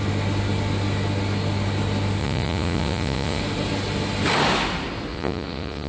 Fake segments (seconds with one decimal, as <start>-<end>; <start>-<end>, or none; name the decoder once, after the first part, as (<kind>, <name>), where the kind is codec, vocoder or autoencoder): 2.2-3.4 (vocoder, Vocos); 5.1-5.9